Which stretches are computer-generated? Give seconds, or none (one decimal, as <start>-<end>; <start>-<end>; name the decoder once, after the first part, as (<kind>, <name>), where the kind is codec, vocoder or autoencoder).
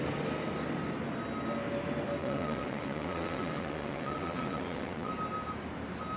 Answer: 2.2-5.1 (vocoder, WaveNeXt)